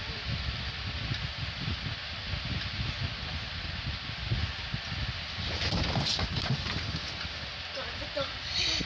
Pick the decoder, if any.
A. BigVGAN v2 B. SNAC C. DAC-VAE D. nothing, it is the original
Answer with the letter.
D